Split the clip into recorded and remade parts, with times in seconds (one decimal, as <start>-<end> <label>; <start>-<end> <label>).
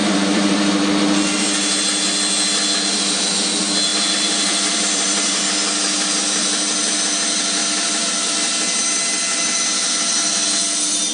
0.0-0.8 remade; 0.8-3.9 recorded; 3.9-5.4 remade; 5.4-7.6 recorded; 7.6-8.1 remade; 8.1-11.1 recorded